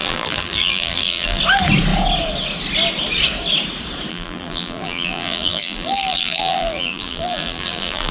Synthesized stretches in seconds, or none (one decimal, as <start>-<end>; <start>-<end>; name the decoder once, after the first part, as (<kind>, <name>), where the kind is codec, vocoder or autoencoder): 0.0-1.4 (vocoder, BigVGAN v2); 4.1-8.1